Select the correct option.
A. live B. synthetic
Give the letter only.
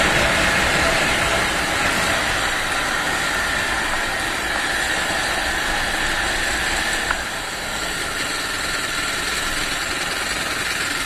A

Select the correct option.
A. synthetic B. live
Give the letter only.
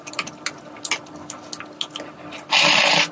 B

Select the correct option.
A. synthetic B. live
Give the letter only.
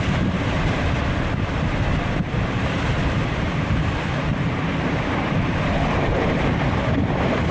A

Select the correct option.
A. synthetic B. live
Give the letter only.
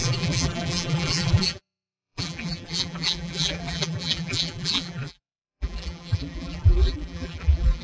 A